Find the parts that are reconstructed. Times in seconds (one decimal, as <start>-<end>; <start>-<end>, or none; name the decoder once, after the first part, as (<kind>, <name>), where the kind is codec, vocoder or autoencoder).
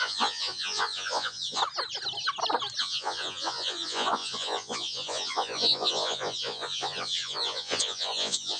0.0-1.6 (vocoder, Vocos); 2.8-8.6